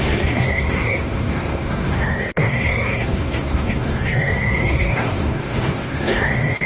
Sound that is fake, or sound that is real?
fake